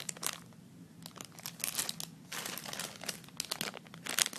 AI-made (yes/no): no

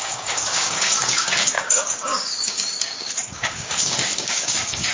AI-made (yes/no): yes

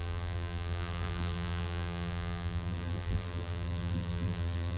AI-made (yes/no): yes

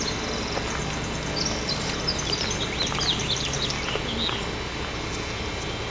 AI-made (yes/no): no